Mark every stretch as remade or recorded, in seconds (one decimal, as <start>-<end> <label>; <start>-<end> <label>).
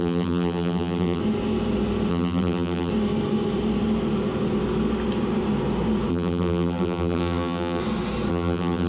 0.0-1.2 remade; 1.2-2.1 recorded; 2.1-2.9 remade; 2.9-6.1 recorded; 6.1-7.8 remade; 7.8-8.3 recorded; 8.3-8.9 remade